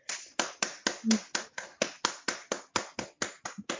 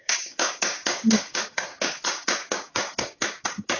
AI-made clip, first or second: second